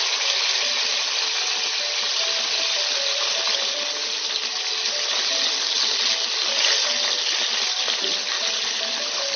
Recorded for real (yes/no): yes